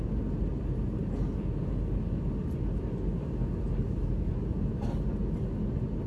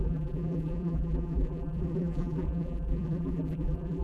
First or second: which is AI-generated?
second